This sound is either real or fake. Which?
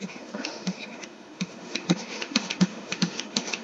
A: fake